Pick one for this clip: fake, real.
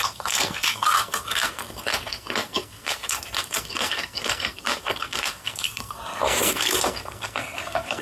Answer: fake